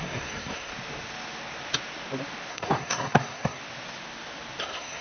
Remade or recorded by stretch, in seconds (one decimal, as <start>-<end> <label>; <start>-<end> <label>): 0.0-0.7 remade; 0.7-2.5 recorded; 2.5-3.6 remade; 3.6-4.6 recorded; 4.6-5.0 remade